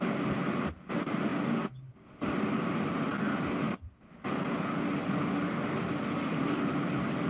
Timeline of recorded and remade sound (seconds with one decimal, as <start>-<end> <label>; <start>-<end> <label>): 0.0-7.3 recorded